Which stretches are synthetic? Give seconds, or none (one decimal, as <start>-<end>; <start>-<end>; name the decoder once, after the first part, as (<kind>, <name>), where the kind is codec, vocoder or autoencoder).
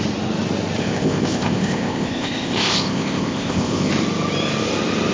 0.8-3.9 (codec, ZipCodec)